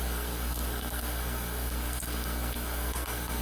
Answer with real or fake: fake